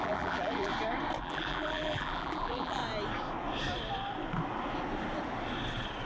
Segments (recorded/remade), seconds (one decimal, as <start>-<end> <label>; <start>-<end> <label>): 0.0-0.7 remade; 0.7-1.2 recorded; 1.2-2.8 remade; 2.8-6.1 recorded